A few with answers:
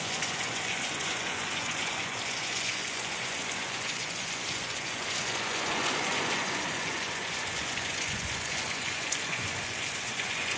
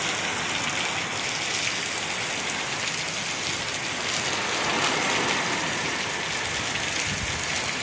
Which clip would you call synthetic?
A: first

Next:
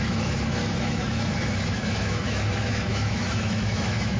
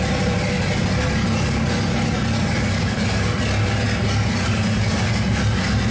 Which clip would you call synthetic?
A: first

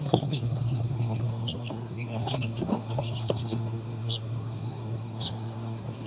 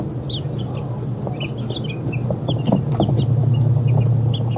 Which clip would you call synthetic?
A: first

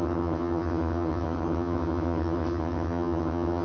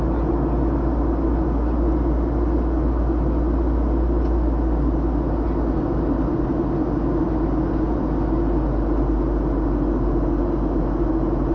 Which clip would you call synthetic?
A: first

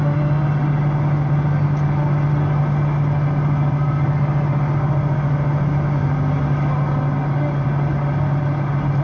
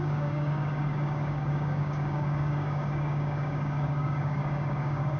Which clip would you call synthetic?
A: second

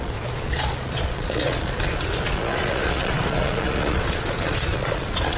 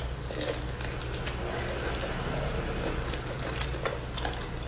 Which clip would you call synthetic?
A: first